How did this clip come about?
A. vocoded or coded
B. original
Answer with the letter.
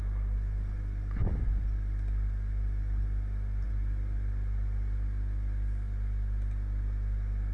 B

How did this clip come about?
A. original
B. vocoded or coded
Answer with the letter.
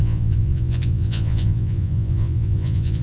B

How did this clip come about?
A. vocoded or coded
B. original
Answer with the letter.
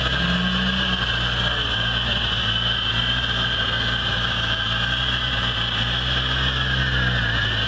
B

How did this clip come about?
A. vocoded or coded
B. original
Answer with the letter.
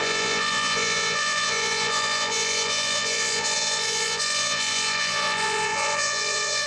A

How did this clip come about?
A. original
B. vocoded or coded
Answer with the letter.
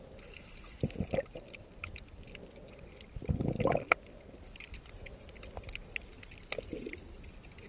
A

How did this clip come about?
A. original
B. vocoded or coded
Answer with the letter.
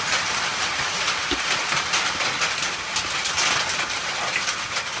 A